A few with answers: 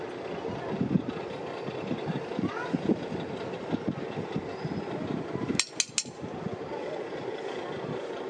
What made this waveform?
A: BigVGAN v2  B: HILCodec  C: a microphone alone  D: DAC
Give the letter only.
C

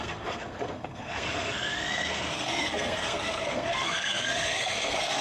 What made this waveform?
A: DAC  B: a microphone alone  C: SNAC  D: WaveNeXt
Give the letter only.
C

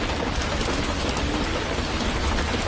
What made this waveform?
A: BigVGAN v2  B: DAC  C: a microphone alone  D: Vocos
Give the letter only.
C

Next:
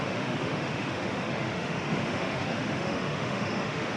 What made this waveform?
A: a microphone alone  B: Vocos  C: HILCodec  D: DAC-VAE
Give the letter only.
D